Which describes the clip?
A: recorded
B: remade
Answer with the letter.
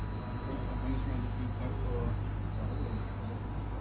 A